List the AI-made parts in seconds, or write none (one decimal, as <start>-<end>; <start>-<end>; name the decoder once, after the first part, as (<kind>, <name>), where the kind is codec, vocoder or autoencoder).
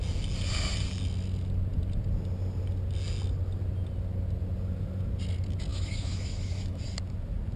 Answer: 5.7-6.8 (autoencoder, DAC-VAE)